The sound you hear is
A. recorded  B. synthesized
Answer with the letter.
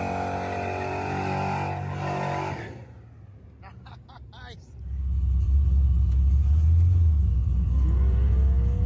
A